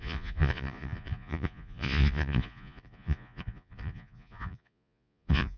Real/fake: fake